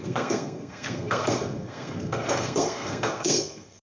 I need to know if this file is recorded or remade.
remade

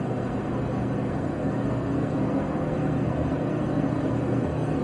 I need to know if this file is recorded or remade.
remade